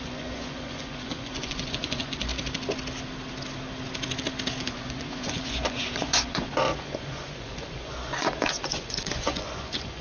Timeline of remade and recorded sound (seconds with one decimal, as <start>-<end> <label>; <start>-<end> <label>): 0.0-2.3 remade; 2.3-4.6 recorded; 4.6-10.0 remade